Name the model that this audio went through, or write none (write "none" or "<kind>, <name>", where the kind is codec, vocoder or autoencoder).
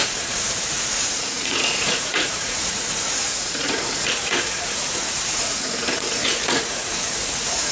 vocoder, Vocos